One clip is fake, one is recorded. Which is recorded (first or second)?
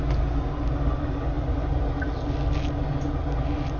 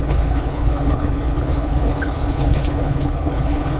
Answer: first